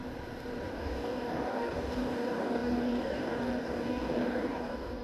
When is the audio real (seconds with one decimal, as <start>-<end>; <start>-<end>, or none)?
0.0-0.7